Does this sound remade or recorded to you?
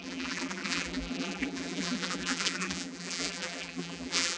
remade